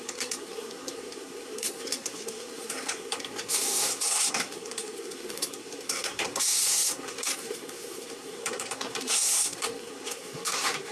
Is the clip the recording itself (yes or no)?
no